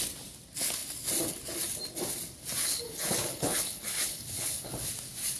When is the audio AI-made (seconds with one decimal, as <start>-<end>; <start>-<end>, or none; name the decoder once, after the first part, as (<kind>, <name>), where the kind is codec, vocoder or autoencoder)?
2.6-4.9 (codec, HILCodec)